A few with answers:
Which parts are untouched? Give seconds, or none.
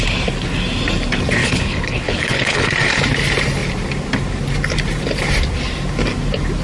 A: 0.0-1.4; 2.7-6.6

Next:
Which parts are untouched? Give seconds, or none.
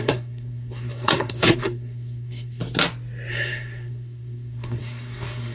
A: 2.6-3.3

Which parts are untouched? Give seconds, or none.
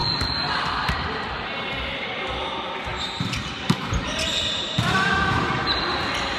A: 0.0-2.9; 5.8-6.4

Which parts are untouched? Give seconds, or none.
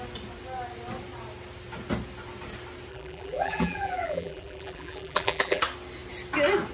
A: 0.0-2.9; 5.6-6.7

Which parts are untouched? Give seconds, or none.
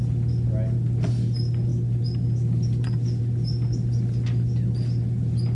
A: 0.0-5.5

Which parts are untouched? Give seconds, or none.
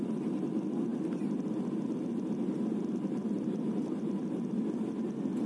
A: 0.0-5.5